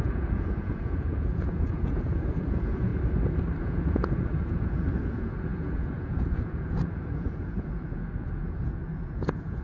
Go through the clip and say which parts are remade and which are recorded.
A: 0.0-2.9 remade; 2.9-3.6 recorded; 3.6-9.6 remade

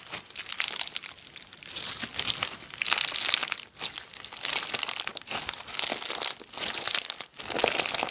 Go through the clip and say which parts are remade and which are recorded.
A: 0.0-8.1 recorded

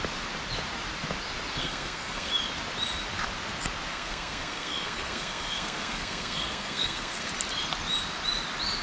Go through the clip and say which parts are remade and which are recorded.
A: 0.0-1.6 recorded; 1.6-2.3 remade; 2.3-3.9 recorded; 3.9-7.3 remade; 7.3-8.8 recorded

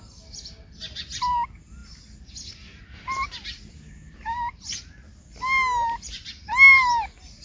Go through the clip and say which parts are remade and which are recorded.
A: 0.0-7.4 recorded